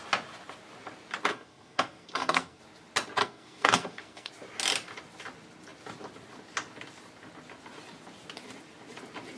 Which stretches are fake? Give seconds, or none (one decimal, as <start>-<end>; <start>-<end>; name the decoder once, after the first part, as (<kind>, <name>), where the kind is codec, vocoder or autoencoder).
1.3-2.6 (codec, SNAC); 3.2-4.3